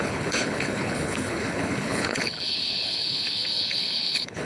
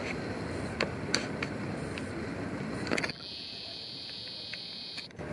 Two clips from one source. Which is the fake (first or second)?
first